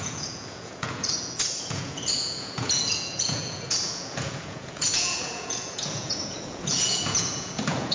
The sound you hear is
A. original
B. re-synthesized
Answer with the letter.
B